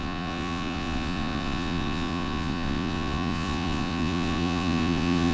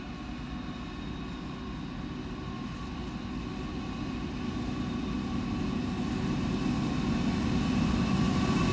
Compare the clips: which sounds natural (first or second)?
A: second